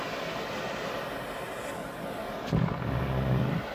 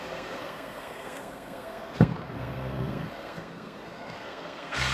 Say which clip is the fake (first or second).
second